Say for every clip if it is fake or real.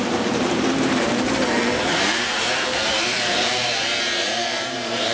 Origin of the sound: fake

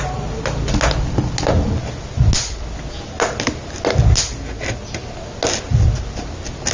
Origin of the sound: real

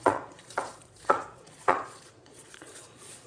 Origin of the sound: fake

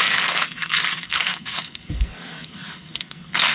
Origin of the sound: fake